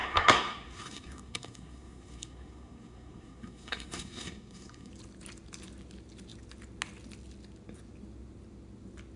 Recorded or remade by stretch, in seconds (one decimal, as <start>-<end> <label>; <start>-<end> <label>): 0.0-4.9 remade; 4.9-9.2 recorded